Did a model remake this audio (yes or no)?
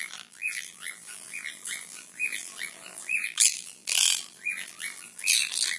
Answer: yes